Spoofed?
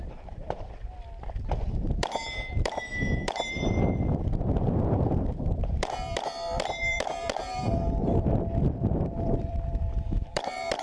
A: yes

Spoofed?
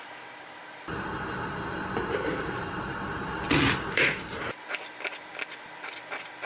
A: no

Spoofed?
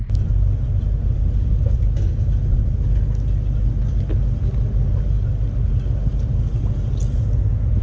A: no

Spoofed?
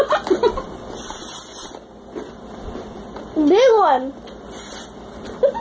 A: no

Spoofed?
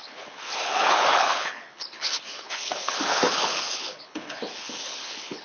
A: yes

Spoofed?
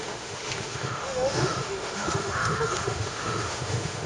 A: yes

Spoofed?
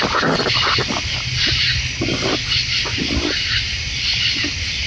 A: no